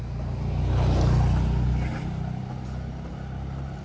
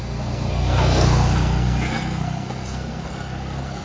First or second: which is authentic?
first